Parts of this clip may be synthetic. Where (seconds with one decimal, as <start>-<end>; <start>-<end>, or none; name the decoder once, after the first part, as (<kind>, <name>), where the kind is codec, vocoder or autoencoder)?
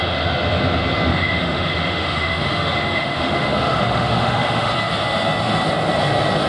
1.1-4.7 (autoencoder, DAC-VAE)